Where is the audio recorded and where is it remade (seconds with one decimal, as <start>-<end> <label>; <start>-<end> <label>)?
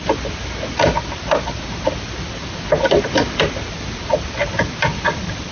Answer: 0.0-5.5 recorded